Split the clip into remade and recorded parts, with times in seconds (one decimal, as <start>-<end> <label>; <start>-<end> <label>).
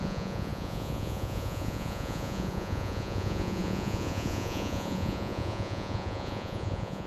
0.0-7.1 remade